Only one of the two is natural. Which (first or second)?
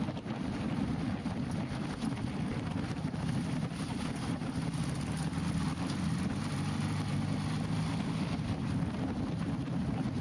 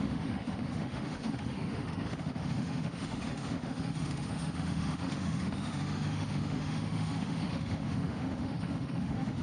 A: first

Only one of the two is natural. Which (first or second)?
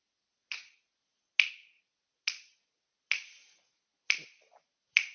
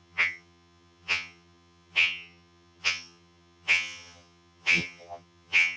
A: first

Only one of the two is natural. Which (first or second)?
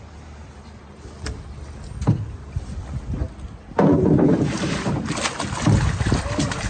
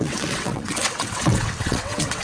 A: first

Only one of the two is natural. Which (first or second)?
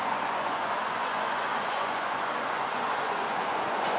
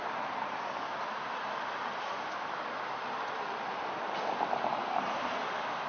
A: second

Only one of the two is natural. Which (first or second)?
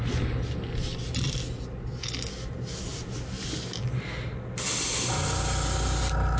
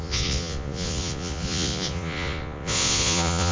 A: first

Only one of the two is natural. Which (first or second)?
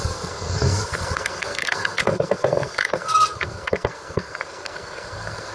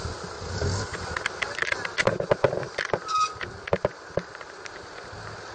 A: second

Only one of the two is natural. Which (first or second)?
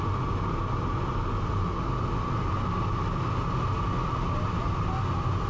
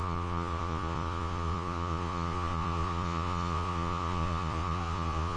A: first